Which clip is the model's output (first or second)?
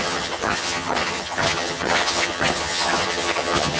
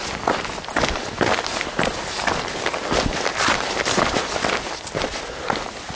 first